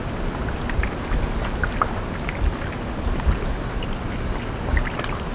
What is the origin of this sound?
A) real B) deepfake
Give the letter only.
A